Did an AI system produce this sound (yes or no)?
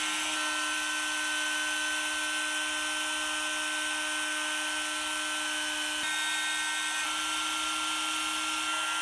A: no